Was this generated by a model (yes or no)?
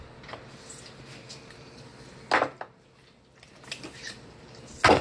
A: no